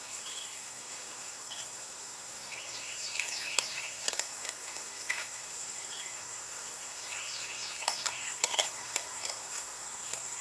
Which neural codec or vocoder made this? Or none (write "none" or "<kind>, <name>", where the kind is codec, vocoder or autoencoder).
codec, SNAC